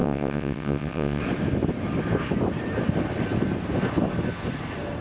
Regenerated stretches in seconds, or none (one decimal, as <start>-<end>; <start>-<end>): 0.0-1.2